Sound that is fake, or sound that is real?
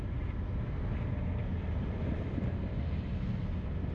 real